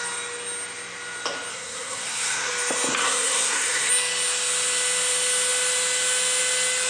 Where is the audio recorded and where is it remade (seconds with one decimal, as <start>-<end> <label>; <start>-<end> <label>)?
0.0-1.5 recorded; 1.5-2.5 remade; 2.5-3.0 recorded; 3.0-3.9 remade; 3.9-6.9 recorded